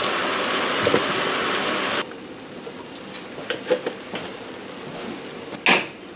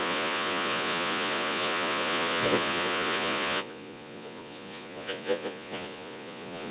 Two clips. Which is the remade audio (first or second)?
second